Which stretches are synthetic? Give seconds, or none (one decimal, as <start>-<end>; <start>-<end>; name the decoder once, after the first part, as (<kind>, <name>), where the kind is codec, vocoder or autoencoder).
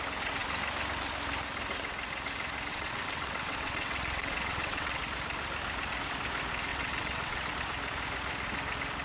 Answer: 2.7-5.0 (vocoder, WaveNeXt); 6.7-7.5